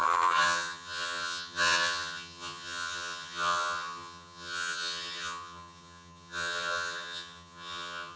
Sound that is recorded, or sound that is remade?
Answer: remade